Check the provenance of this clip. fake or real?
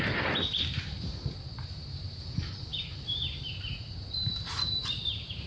fake